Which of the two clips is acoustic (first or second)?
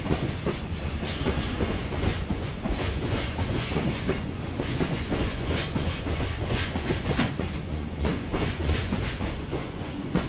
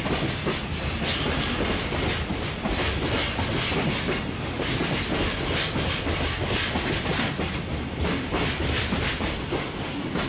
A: second